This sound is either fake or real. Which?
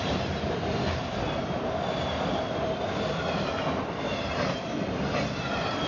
real